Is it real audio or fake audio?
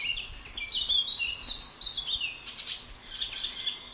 real